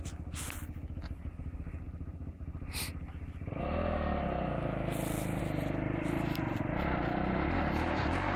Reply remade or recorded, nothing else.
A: recorded